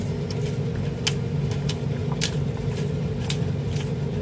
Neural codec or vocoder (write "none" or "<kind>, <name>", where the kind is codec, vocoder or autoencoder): none